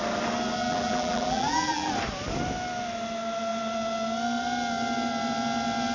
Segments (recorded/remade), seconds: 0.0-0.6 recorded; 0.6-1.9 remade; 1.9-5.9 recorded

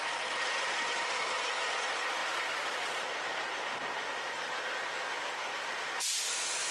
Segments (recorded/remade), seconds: 0.0-6.7 recorded

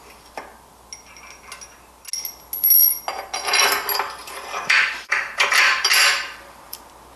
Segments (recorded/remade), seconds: 0.0-4.2 recorded; 4.2-6.8 remade; 6.8-7.2 recorded

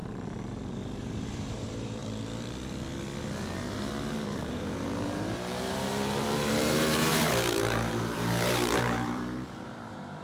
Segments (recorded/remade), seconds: 0.0-1.0 recorded; 1.0-2.0 remade; 2.0-4.5 recorded; 4.5-10.2 remade